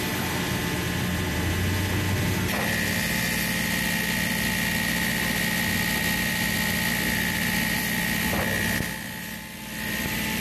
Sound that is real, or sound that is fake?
real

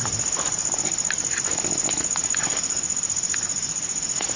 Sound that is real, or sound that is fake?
real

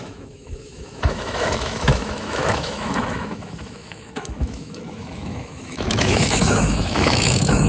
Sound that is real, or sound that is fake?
fake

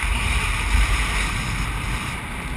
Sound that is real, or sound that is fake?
real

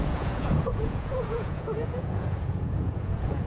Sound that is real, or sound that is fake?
fake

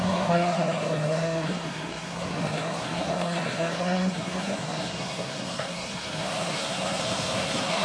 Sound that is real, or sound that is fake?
fake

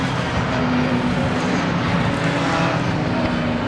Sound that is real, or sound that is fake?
real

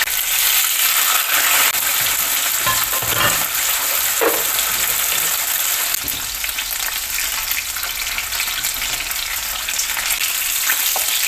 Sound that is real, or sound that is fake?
real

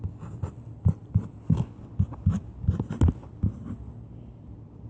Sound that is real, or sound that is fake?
real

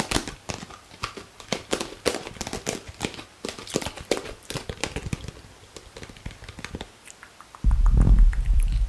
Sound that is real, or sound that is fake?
fake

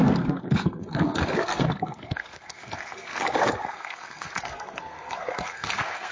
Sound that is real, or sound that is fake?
fake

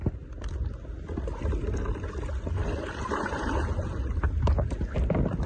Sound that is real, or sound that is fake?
real